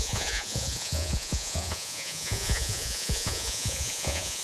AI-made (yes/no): yes